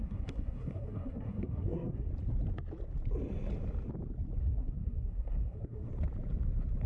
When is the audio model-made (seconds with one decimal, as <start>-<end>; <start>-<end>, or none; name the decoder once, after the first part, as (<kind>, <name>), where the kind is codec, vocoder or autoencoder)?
0.0-2.1 (codec, SNAC); 4.4-5.9